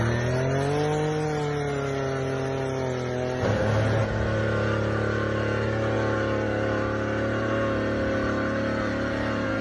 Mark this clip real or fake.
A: real